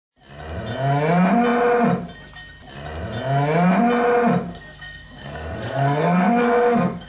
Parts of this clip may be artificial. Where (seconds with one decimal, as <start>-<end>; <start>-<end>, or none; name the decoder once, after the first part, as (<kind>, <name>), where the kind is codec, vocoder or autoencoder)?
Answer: 4.5-7.1 (codec, SNAC)